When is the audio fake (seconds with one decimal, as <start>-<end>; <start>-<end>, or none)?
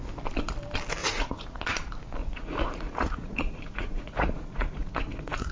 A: 1.0-1.6; 2.2-5.5